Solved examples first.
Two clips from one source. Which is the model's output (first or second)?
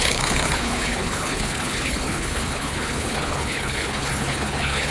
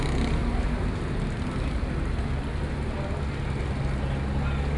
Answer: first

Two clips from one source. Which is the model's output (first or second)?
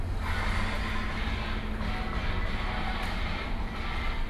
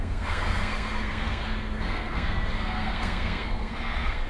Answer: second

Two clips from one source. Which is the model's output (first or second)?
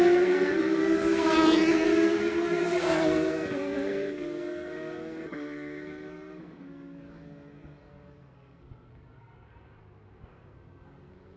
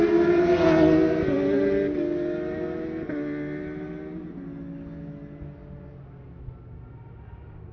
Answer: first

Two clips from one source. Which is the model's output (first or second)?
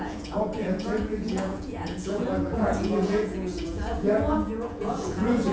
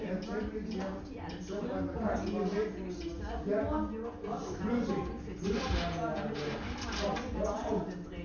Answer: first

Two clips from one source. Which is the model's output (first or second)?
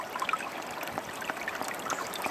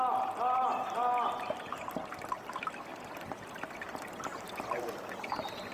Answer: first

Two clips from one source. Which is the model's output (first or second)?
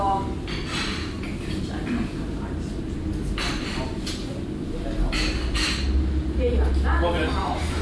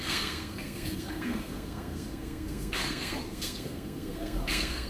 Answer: second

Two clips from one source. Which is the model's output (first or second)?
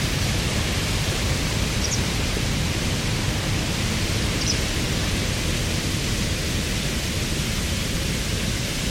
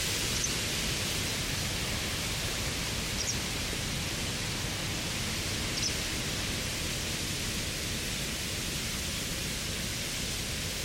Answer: first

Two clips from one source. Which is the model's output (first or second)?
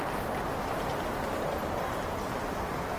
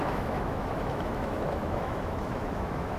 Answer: second